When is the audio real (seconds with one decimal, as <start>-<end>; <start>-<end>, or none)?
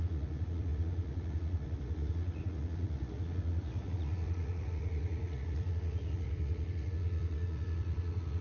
none